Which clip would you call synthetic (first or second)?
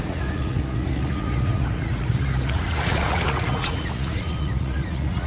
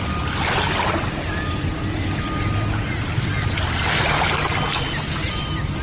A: first